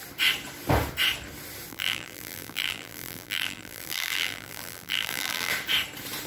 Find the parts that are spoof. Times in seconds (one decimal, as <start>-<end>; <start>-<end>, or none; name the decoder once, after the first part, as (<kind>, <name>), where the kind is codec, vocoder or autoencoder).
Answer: 1.7-5.5 (vocoder, BigVGAN v2)